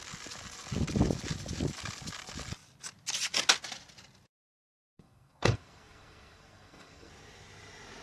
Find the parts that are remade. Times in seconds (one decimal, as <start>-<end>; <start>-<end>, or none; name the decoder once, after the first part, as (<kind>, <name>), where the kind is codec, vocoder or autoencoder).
4.5-7.1 (codec, SNAC)